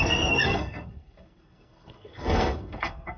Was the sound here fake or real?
fake